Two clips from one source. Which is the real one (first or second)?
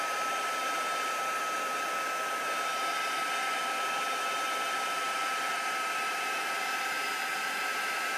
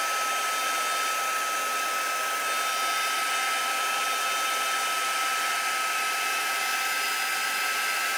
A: second